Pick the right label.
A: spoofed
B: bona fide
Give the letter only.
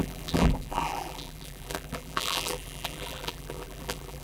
A